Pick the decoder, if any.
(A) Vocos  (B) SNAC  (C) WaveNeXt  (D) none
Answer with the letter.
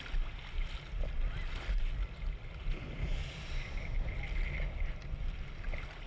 D